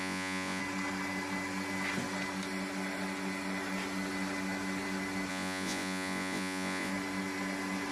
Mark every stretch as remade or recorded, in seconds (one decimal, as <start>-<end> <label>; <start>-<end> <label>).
0.0-0.6 remade; 0.6-5.3 recorded; 5.3-6.9 remade; 6.9-7.9 recorded